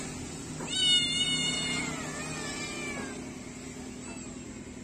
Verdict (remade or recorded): recorded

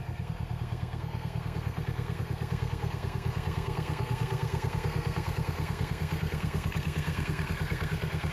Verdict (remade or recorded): remade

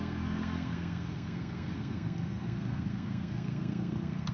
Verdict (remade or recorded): remade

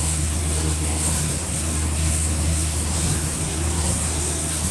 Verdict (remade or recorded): remade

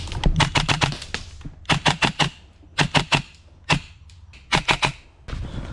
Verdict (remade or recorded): recorded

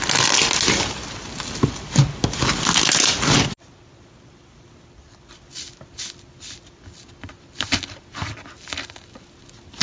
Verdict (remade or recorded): recorded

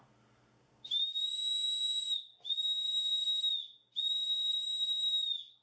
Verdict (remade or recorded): recorded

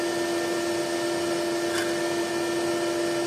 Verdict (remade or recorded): recorded